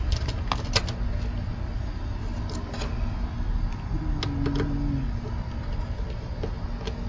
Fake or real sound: real